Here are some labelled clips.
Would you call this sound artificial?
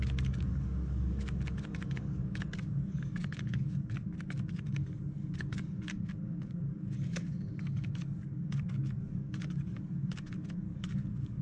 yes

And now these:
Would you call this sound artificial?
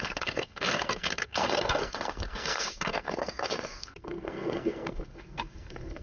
yes